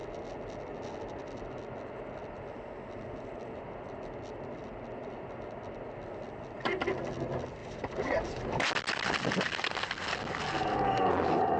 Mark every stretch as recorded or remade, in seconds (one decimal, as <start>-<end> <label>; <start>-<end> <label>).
0.0-7.6 recorded; 7.6-8.7 remade; 8.7-11.6 recorded